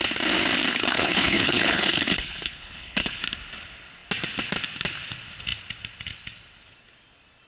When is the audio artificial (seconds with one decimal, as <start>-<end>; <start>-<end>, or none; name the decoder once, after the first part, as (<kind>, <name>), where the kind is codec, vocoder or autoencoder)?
0.7-3.2 (codec, HILCodec)